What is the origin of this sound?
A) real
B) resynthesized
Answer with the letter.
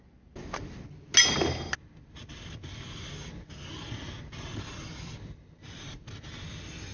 A